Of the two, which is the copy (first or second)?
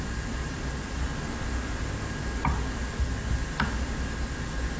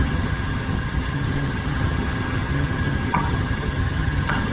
second